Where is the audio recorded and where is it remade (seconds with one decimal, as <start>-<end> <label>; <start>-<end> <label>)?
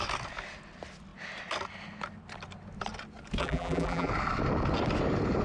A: 0.0-3.4 recorded; 3.4-4.1 remade; 4.1-5.4 recorded